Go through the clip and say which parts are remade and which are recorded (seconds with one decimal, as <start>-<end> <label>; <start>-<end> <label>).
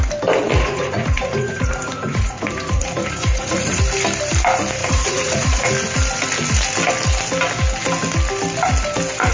0.0-0.5 recorded; 0.5-3.8 remade; 3.8-4.8 recorded; 4.8-5.7 remade; 5.7-9.3 recorded